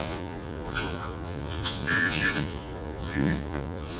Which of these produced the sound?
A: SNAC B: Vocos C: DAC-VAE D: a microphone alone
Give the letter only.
B